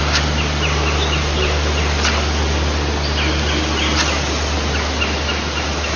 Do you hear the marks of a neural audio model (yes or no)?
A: no